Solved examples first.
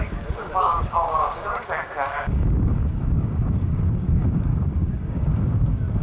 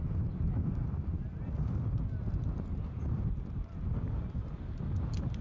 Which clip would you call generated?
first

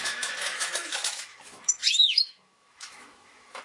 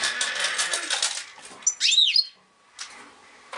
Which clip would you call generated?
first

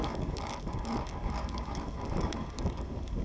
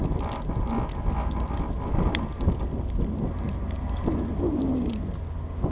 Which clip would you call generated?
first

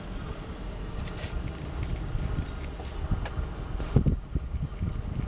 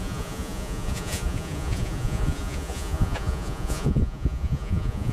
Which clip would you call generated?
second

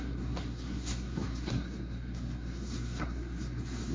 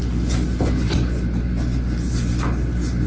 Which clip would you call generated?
first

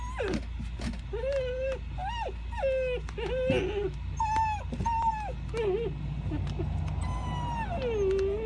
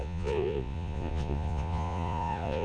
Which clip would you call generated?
second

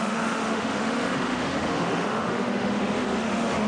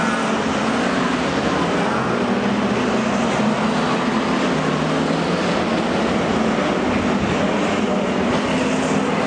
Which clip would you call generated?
first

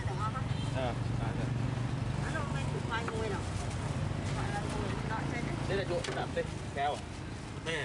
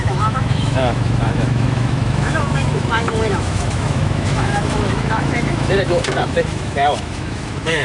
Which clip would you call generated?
second